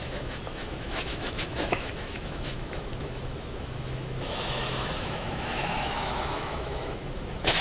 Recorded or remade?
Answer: remade